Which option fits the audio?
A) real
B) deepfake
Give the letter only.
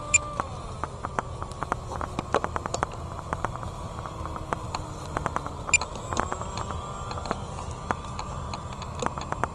A